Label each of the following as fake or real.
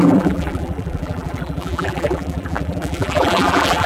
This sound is fake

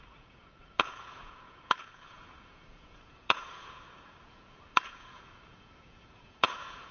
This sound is fake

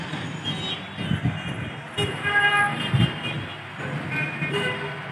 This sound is real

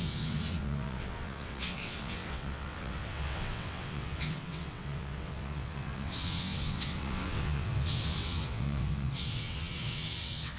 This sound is fake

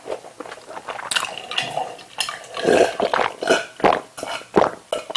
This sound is real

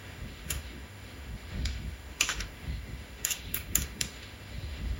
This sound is fake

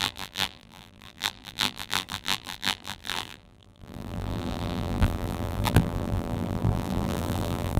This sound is fake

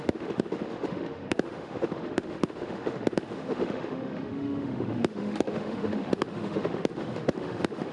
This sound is fake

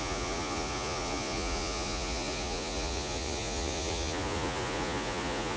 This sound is fake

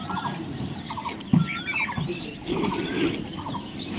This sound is fake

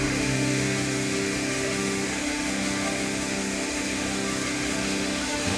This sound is fake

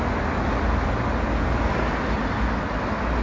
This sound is real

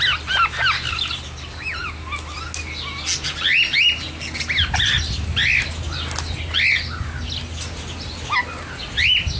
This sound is real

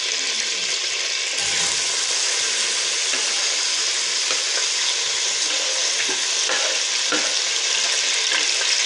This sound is real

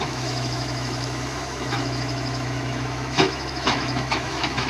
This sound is fake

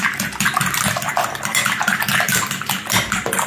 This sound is real